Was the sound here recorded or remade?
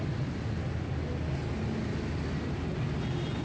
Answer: recorded